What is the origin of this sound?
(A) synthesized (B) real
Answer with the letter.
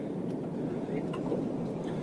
B